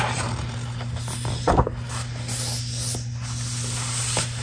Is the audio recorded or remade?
recorded